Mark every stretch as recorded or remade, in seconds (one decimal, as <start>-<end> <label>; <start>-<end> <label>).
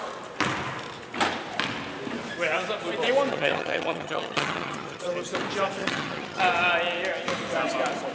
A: 0.0-3.3 recorded; 3.3-5.1 remade; 5.1-5.8 recorded; 5.8-6.4 remade; 6.4-8.1 recorded